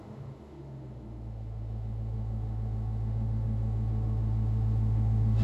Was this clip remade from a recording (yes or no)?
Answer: yes